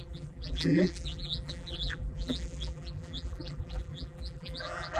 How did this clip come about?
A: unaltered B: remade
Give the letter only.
B